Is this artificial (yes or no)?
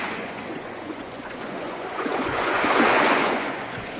yes